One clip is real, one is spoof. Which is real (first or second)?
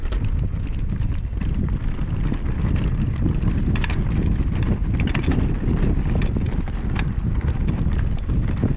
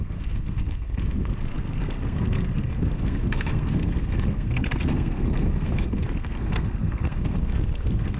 first